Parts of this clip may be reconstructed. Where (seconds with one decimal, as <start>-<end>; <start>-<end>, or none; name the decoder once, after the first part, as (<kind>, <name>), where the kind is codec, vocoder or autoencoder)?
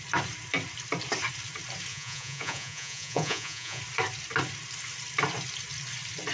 1.9-3.8 (vocoder, Vocos)